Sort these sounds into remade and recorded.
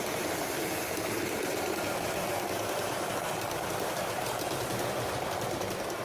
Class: remade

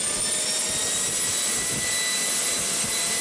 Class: recorded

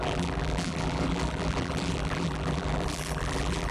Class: remade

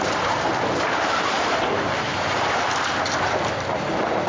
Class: remade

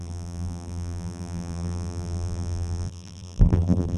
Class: remade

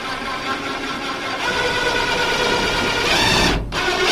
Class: remade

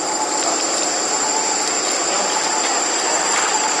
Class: remade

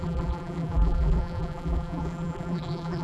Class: remade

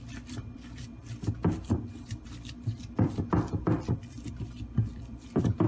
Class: remade